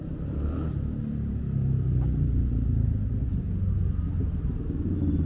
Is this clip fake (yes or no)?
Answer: no